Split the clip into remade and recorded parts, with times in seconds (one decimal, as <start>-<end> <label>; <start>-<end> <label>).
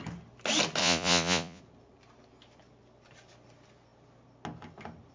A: 0.0-0.8 recorded; 0.8-1.6 remade; 1.6-5.1 recorded